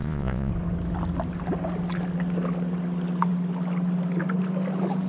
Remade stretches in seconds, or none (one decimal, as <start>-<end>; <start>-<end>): 0.0-0.5